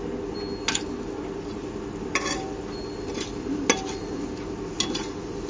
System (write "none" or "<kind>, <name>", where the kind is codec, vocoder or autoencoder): none